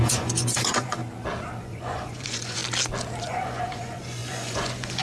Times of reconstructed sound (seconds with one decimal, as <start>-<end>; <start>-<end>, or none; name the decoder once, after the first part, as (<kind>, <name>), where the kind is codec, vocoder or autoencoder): 0.0-1.0 (vocoder, Vocos); 1.6-2.6; 3.2-5.0